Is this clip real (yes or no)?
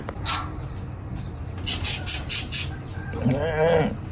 yes